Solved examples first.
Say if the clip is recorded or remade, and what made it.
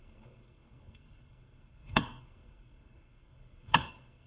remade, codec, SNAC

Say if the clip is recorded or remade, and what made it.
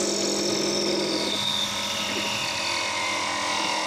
recorded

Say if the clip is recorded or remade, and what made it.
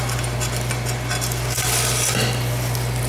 recorded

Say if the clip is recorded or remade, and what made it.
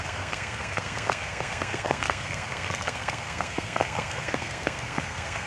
remade, codec, SNAC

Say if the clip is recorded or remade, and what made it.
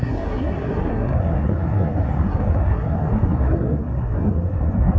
remade, codec, SNAC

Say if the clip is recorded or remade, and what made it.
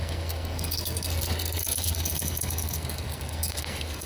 remade, codec, SNAC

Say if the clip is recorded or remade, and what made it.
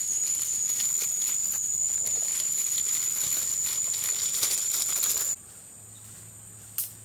recorded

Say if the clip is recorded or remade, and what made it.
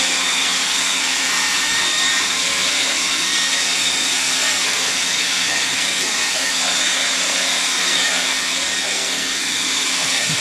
remade, codec, SNAC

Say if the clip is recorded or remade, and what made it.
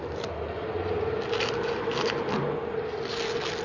recorded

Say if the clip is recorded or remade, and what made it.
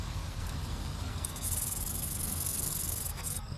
remade, codec, SNAC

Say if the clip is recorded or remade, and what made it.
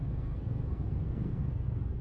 remade, codec, SNAC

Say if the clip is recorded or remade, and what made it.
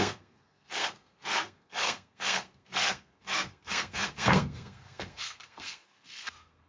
remade, codec, SNAC